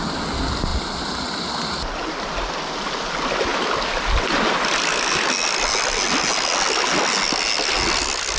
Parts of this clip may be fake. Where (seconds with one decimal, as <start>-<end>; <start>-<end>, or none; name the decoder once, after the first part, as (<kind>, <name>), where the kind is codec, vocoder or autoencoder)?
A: none